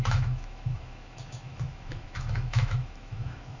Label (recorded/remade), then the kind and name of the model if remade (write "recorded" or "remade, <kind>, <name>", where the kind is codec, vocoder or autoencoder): remade, autoencoder, DAC-VAE